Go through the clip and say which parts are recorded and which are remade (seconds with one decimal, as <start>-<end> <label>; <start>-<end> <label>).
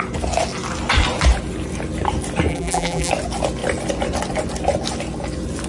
0.0-2.5 recorded; 2.5-3.1 remade; 3.1-5.7 recorded